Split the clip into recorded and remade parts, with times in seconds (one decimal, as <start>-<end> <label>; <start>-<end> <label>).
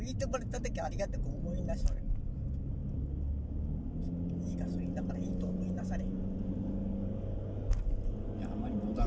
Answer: 0.0-9.1 recorded